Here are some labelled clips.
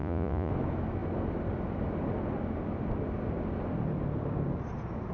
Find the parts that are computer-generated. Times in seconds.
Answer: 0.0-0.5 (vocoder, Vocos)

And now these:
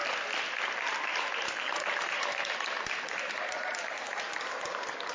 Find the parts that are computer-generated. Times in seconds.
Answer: 1.1-4.2 (vocoder, BigVGAN v2)